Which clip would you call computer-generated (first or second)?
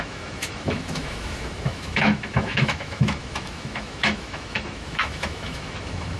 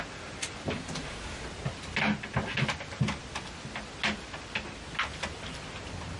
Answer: first